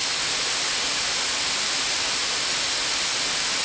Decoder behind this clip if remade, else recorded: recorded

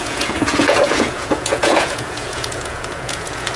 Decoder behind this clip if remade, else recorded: remade, vocoder, Vocos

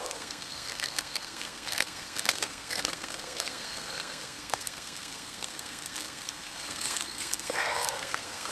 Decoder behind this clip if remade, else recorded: remade, codec, SNAC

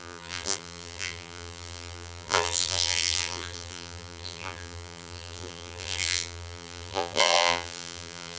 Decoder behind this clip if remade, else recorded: remade, vocoder, BigVGAN v2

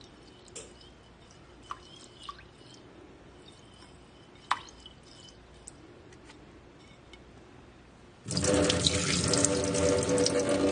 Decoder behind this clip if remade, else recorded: recorded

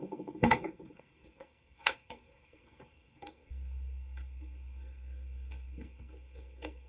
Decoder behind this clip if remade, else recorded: remade, codec, SNAC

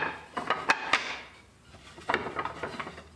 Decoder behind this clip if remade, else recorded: recorded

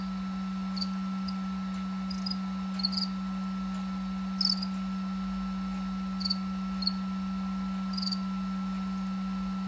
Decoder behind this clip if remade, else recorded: recorded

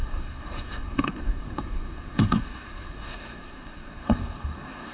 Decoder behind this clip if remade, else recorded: remade, codec, SNAC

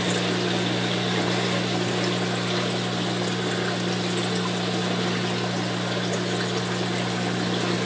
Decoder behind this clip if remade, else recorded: recorded